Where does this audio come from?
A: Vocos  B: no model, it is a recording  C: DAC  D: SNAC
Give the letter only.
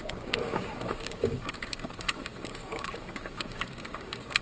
C